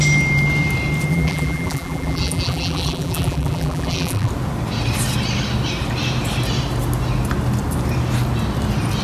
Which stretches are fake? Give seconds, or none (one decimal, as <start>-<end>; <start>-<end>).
1.1-4.3